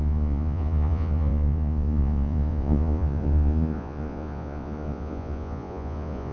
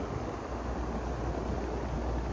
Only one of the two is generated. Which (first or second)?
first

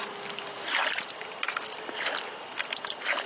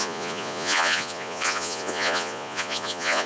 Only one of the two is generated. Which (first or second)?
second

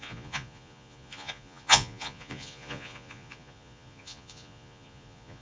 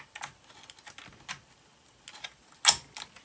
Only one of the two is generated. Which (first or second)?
first